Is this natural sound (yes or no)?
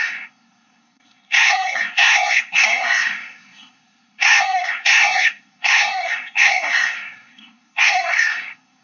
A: no